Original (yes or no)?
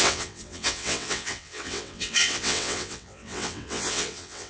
no